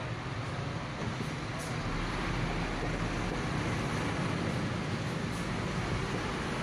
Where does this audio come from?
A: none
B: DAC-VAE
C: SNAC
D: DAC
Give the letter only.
A